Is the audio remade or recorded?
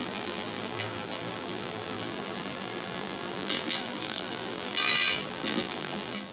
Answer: remade